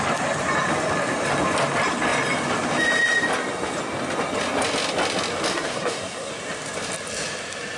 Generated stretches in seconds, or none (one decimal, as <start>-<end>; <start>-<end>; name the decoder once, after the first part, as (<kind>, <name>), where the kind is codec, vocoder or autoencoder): 5.5-6.3 (codec, SNAC)